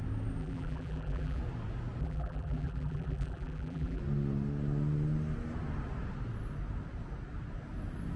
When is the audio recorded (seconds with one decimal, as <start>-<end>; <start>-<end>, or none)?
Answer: 0.0-0.4; 1.4-2.0; 4.0-8.2